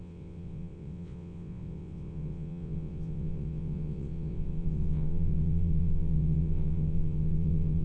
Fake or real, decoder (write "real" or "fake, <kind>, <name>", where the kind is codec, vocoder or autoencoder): fake, vocoder, WaveNeXt